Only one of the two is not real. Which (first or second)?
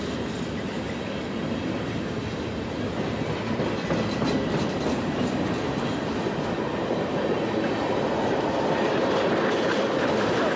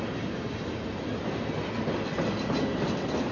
first